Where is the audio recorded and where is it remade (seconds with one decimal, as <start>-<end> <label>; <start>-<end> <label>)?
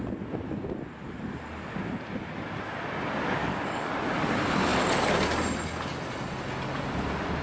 0.0-3.4 recorded; 3.4-3.9 remade; 3.9-7.4 recorded